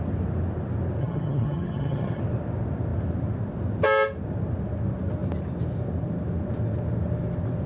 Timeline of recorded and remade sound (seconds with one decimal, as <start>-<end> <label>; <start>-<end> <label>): 0.0-1.0 recorded; 1.0-2.2 remade; 2.2-7.7 recorded

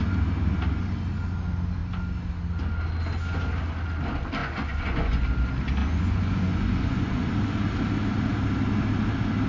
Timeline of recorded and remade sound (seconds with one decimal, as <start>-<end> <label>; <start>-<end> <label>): 0.0-4.4 recorded; 4.4-5.2 remade; 5.2-5.8 recorded; 5.8-7.3 remade; 7.3-9.5 recorded